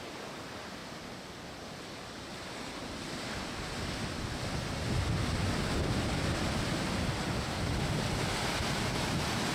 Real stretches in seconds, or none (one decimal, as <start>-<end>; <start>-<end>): 0.0-9.5